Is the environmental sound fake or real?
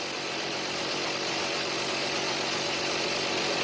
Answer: real